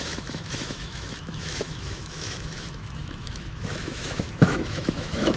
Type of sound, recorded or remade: remade